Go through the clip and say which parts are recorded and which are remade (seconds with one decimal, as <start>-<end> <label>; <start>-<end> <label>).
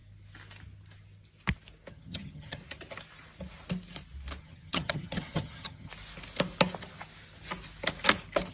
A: 0.0-1.9 recorded; 1.9-2.6 remade; 2.6-4.4 recorded; 4.4-5.9 remade; 5.9-8.5 recorded